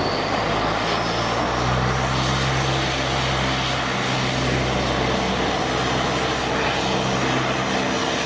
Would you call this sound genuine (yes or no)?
yes